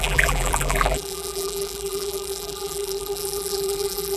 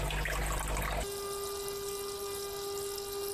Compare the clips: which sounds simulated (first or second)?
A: first